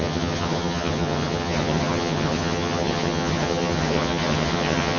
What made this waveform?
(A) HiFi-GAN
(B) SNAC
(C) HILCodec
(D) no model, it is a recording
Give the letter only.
A